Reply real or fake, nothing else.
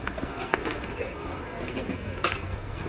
fake